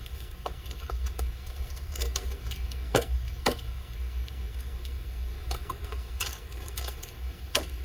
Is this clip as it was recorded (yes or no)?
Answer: no